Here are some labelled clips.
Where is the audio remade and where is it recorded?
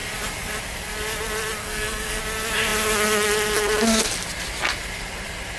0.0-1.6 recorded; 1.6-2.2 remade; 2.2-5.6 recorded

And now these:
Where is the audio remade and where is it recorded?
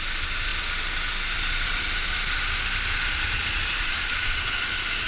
0.0-5.1 recorded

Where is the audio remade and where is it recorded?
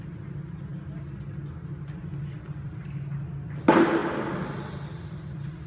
0.0-5.7 recorded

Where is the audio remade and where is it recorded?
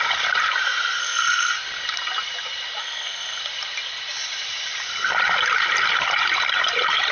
0.0-1.0 recorded; 1.0-1.5 remade; 1.5-2.8 recorded; 2.8-3.4 remade; 3.4-7.1 recorded